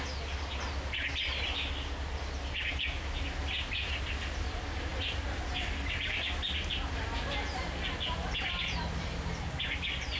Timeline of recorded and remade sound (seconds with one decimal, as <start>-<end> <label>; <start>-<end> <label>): 0.0-10.2 recorded

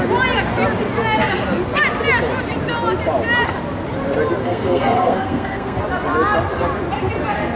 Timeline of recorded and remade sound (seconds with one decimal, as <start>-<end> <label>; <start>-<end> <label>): 0.0-4.4 recorded; 4.4-5.8 remade; 5.8-7.6 recorded

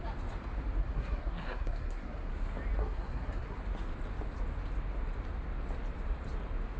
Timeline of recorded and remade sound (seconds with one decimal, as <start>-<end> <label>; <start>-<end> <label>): 0.0-0.8 recorded; 0.8-2.3 remade; 2.3-2.8 recorded; 2.8-3.6 remade; 3.6-6.8 recorded

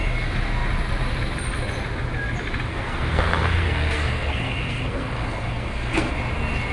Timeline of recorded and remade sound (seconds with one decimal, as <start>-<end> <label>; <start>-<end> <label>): 0.0-2.7 recorded; 2.7-6.1 remade; 6.1-6.7 recorded

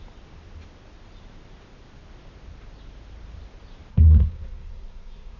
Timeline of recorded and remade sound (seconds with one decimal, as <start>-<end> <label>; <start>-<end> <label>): 0.0-3.9 recorded; 3.9-5.4 remade

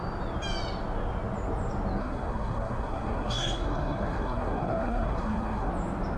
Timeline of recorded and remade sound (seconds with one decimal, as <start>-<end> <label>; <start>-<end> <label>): 0.0-2.0 recorded; 2.0-5.7 remade; 5.7-6.2 recorded

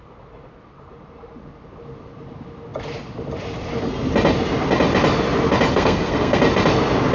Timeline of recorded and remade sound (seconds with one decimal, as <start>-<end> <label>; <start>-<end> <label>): 0.0-5.7 recorded; 5.7-6.4 remade; 6.4-7.1 recorded